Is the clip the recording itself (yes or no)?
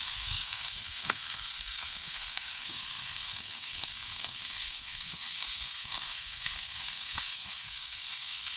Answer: no